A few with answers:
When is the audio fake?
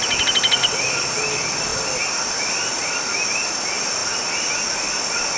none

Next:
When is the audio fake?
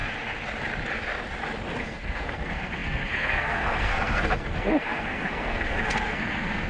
1.8-6.7 (codec, SNAC)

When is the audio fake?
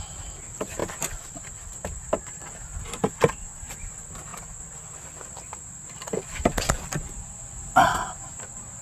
0.0-0.8 (vocoder, BigVGAN v2); 1.3-2.7; 3.7-4.3; 5.3-8.8